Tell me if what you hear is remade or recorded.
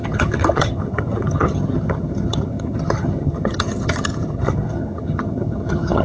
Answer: remade